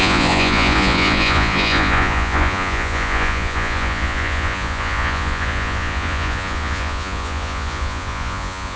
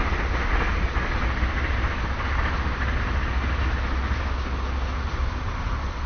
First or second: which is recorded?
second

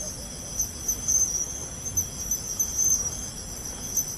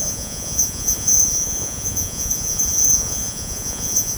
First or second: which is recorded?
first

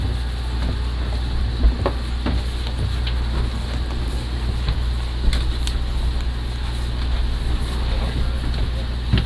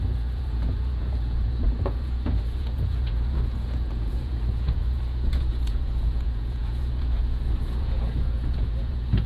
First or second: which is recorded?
first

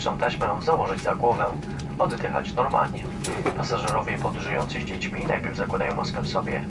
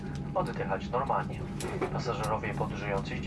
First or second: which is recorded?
second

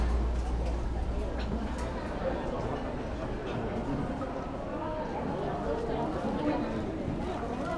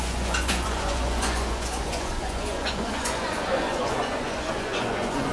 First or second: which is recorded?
first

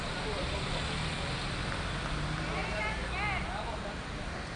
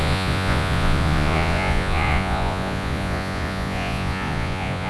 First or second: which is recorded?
first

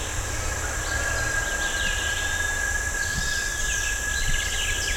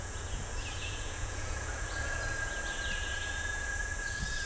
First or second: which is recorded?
first